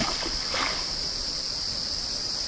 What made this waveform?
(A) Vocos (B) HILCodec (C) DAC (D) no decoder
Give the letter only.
D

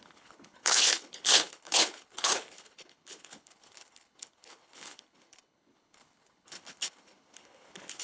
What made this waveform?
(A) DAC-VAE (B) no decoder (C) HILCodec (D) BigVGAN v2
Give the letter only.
C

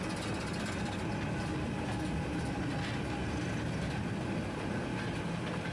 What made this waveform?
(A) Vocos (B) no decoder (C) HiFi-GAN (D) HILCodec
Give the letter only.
B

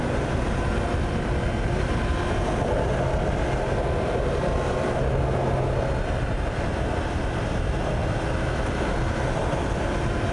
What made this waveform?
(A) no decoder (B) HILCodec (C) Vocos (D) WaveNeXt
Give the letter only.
A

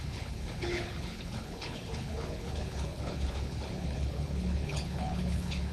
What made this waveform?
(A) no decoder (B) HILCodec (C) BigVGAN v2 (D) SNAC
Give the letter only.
B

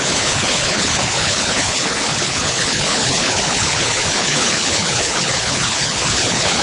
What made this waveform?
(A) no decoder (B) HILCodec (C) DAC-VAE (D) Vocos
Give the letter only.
B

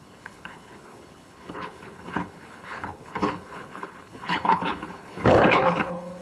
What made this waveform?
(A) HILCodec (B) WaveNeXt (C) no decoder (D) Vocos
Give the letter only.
A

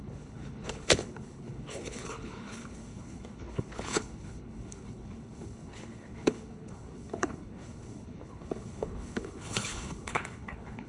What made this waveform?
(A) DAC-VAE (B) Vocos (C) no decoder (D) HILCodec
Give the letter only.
D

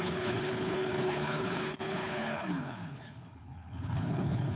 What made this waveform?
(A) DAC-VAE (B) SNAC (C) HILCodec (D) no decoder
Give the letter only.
C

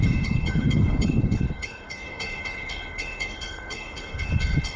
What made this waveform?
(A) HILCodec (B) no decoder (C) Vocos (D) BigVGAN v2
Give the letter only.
A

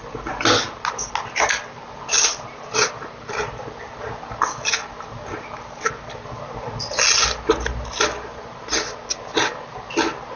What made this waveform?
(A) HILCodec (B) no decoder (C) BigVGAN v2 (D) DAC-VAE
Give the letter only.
B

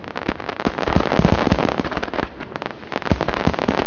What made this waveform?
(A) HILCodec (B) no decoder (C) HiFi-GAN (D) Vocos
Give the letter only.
B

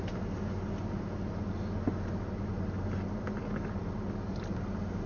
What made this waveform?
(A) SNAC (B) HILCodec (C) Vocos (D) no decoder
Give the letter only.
D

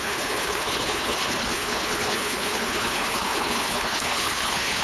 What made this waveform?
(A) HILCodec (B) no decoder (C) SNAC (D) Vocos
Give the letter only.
A